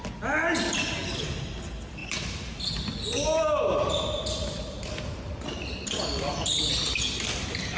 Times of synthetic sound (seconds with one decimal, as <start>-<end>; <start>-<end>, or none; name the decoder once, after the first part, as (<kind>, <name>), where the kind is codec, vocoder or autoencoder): none